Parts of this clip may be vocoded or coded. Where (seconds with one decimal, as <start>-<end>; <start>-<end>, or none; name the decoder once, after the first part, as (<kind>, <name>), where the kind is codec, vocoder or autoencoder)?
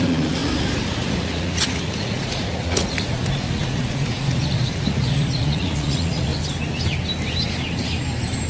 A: 0.0-6.3 (vocoder, Vocos)